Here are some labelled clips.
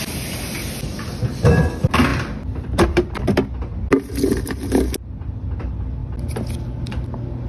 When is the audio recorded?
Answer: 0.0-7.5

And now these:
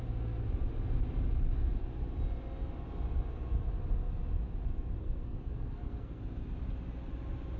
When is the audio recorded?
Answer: 0.0-5.0; 6.2-7.6

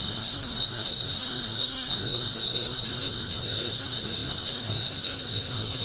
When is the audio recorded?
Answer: none